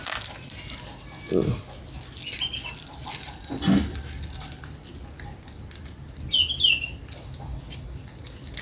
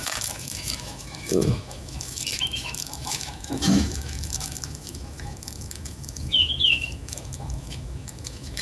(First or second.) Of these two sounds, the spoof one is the second